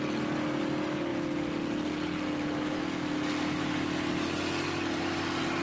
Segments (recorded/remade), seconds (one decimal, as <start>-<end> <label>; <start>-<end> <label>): 0.0-5.6 recorded